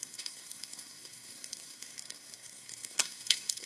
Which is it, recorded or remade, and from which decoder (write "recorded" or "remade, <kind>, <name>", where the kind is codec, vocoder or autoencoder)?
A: remade, codec, SNAC